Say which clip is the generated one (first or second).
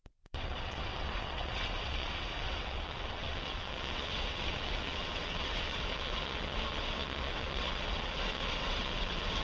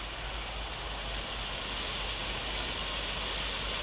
first